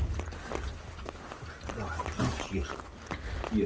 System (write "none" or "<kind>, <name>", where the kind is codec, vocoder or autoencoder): none